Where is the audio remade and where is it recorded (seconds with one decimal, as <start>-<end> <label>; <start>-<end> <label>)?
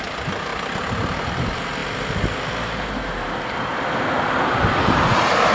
0.0-5.5 recorded